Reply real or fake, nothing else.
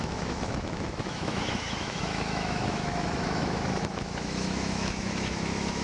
fake